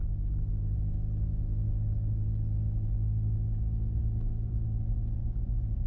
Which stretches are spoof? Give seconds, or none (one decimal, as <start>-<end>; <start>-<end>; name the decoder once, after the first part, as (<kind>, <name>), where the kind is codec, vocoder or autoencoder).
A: 5.2-5.9 (vocoder, BigVGAN v2)